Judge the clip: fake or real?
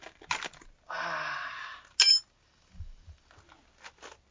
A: real